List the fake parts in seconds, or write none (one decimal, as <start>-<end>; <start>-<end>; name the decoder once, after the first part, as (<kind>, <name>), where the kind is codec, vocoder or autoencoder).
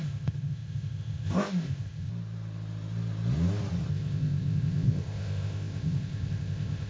0.0-2.1 (codec, ZipCodec); 3.9-6.9